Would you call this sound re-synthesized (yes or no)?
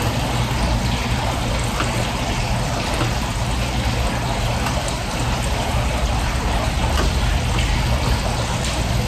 no